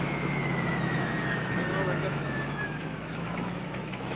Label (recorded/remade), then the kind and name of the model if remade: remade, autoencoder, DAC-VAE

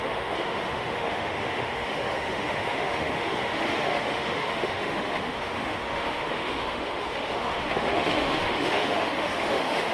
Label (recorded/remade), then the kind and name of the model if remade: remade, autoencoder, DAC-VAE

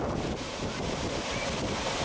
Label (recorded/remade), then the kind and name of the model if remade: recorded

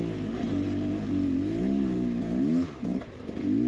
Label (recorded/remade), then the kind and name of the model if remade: recorded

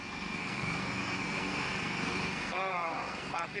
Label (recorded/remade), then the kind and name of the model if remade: remade, codec, SNAC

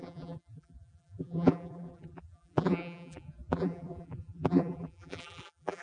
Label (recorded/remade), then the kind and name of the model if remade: remade, vocoder, BigVGAN v2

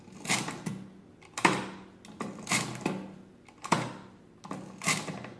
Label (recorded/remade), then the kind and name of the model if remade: recorded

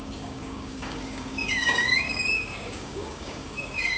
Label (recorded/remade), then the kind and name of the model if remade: remade, codec, DAC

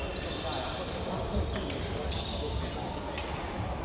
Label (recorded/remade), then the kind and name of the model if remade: recorded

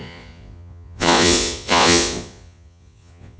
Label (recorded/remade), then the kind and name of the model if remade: remade, vocoder, Vocos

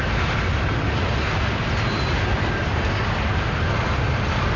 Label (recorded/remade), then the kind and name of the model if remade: recorded